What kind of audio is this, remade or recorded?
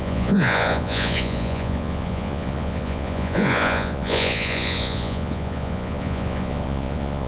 remade